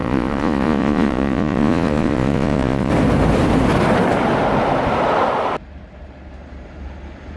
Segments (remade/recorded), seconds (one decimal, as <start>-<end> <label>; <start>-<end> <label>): 0.0-2.9 remade; 2.9-7.4 recorded